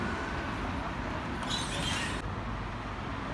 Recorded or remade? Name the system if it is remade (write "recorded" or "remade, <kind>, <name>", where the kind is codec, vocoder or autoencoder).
recorded